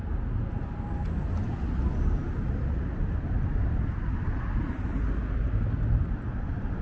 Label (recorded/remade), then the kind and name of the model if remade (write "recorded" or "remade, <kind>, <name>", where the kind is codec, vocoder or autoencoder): recorded